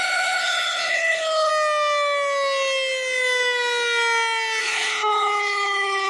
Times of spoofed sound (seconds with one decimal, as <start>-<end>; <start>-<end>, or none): 0.0-1.5; 4.6-6.1